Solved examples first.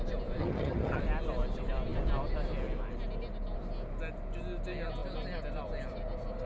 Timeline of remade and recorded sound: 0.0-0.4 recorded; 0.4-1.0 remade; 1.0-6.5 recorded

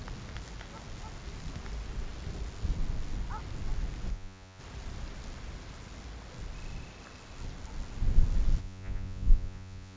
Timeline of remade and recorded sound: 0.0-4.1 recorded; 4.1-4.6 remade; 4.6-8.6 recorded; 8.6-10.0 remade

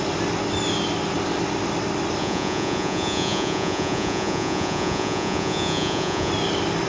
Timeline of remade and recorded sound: 0.0-2.2 recorded; 2.2-6.3 remade; 6.3-6.9 recorded

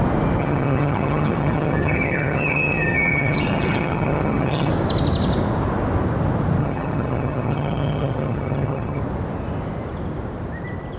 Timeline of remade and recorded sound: 0.0-0.4 recorded; 0.4-4.7 remade; 4.7-6.6 recorded; 6.6-9.0 remade; 9.0-11.0 recorded

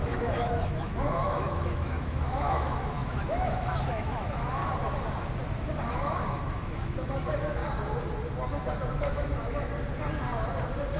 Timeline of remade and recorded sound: 0.0-4.6 remade; 4.6-5.9 recorded; 5.9-7.6 remade; 7.6-8.9 recorded; 8.9-9.7 remade; 9.7-11.0 recorded

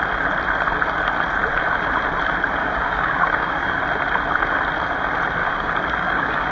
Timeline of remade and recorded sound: 0.0-2.6 recorded; 2.6-3.8 remade; 3.8-5.4 recorded; 5.4-6.5 remade

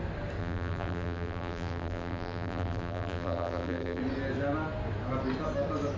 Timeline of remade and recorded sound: 0.0-0.4 recorded; 0.4-4.0 remade; 4.0-6.0 recorded

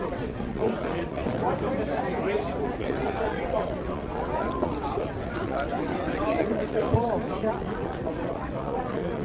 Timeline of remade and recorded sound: 0.0-1.4 remade; 1.4-2.6 recorded; 2.6-9.2 remade